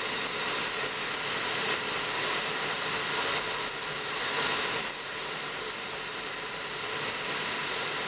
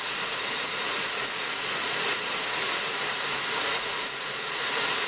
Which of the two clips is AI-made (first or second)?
second